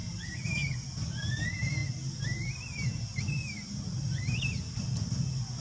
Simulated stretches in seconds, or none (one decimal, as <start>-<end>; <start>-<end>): none